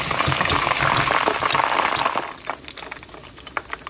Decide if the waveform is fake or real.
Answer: real